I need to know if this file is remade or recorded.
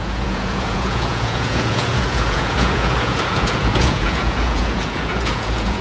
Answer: remade